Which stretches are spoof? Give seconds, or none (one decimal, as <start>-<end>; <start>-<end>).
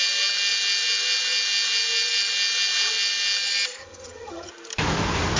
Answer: 3.8-4.5